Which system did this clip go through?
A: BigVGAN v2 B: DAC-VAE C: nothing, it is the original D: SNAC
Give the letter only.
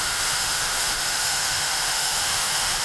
B